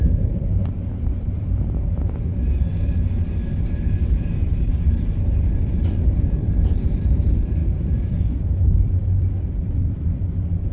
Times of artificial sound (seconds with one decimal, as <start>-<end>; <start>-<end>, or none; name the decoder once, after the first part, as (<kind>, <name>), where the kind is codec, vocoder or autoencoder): 0.0-2.7 (vocoder, BigVGAN v2); 4.7-10.7